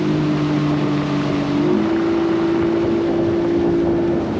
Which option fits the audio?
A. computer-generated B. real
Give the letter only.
B